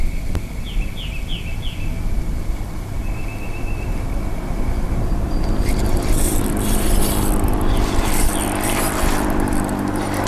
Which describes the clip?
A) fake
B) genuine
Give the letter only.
A